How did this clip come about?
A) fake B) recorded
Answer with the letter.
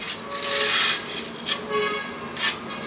B